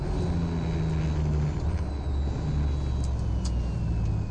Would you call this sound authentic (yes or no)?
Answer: yes